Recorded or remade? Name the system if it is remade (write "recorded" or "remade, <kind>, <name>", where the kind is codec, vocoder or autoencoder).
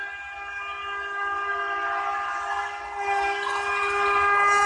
recorded